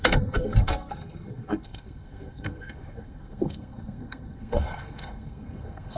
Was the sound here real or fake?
fake